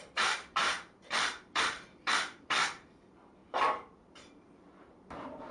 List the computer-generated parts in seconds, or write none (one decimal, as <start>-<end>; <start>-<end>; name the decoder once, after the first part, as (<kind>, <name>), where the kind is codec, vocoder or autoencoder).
0.0-3.4 (vocoder, BigVGAN v2); 4.0-5.5